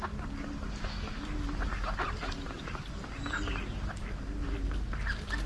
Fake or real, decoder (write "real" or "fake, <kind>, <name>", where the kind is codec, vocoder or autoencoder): real